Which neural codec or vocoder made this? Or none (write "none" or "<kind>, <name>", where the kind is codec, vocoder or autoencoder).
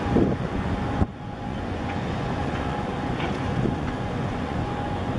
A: vocoder, Vocos